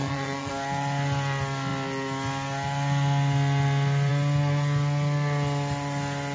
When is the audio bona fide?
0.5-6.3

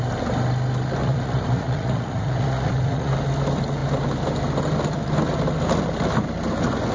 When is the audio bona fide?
0.0-1.0; 3.1-6.9

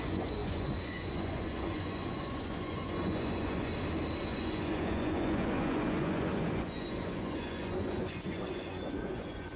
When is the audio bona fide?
3.7-4.2

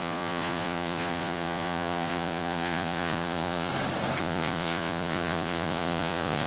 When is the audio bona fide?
3.7-4.2

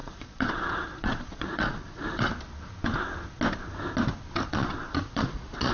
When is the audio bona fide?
2.3-4.5